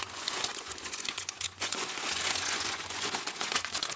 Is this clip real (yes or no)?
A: no